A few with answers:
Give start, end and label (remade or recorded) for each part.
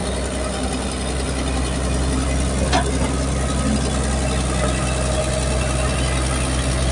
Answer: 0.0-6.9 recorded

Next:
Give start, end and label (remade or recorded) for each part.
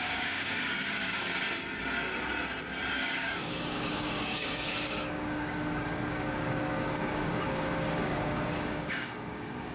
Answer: 0.0-1.3 remade; 1.3-2.9 recorded; 2.9-9.7 remade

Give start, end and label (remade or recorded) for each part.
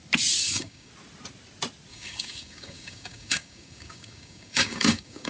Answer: 0.0-0.4 recorded; 0.4-0.9 remade; 0.9-1.9 recorded; 1.9-5.3 remade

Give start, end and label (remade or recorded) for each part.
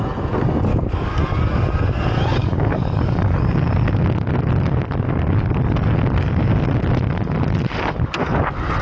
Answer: 0.0-0.7 recorded; 0.7-1.2 remade; 1.2-2.4 recorded; 2.4-3.7 remade; 3.7-8.8 recorded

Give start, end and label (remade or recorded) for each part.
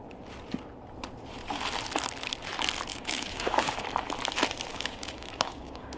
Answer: 0.0-2.9 recorded; 2.9-3.7 remade; 3.7-4.7 recorded; 4.7-6.0 remade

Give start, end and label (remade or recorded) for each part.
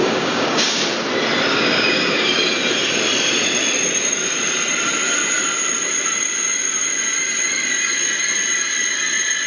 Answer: 0.0-0.8 remade; 0.8-1.5 recorded; 1.5-2.3 remade; 2.3-9.5 recorded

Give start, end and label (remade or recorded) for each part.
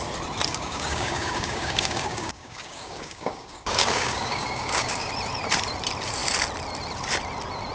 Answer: 0.0-0.5 recorded; 0.5-5.1 remade; 5.1-7.7 recorded